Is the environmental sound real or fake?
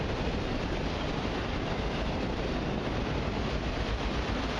real